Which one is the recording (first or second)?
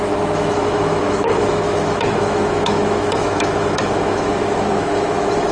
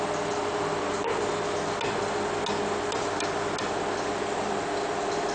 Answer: second